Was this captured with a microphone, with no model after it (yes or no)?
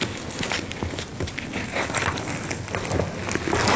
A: yes